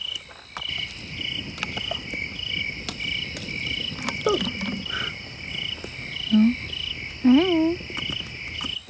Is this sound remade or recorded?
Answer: recorded